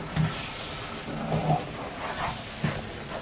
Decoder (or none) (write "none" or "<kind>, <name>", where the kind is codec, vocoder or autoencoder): none